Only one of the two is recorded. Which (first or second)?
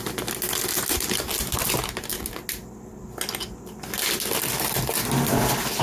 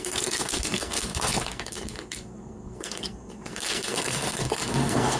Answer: first